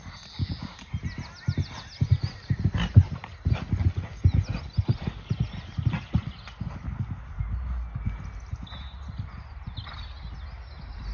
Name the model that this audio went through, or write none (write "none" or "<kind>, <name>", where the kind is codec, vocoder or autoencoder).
none